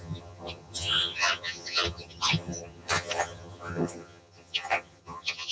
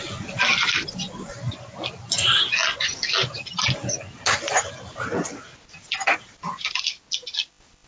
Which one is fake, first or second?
first